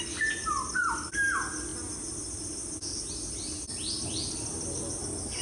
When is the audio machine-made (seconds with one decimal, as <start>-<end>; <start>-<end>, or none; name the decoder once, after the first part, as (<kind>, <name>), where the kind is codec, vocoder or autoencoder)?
none